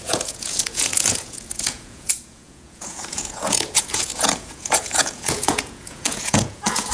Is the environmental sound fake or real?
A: fake